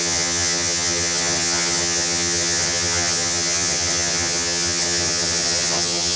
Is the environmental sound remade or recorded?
remade